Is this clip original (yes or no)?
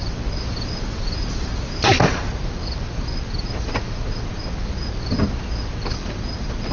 yes